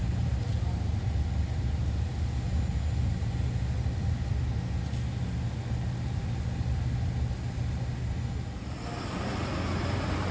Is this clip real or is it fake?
real